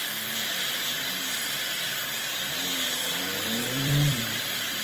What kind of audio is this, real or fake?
fake